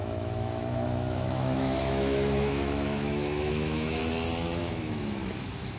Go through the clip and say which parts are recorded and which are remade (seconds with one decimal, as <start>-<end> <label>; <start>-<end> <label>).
0.0-4.0 remade; 4.0-4.6 recorded; 4.6-5.8 remade